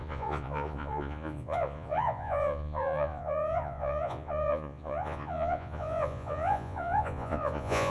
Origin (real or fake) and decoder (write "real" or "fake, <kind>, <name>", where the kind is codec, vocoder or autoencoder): fake, vocoder, Vocos